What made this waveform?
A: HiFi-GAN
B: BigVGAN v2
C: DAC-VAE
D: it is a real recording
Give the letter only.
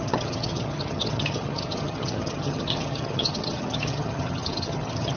A